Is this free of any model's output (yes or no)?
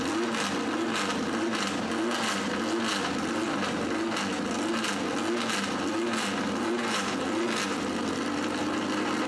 yes